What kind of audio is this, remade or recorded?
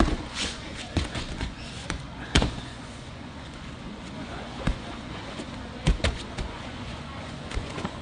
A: remade